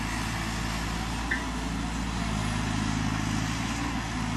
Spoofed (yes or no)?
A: no